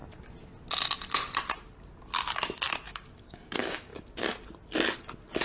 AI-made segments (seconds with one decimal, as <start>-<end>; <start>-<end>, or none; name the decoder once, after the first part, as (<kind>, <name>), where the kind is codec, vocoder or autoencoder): 3.2-3.9 (codec, DAC)